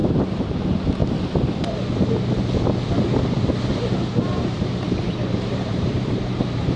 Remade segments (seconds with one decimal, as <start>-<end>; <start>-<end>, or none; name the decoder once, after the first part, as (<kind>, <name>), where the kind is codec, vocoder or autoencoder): 0.0-0.6 (vocoder, BigVGAN v2); 4.1-6.8